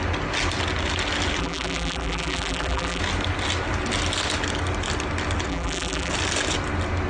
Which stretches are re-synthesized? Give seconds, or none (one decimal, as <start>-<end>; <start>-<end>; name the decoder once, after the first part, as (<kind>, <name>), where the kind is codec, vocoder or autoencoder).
1.4-3.0 (vocoder, BigVGAN v2); 5.5-6.1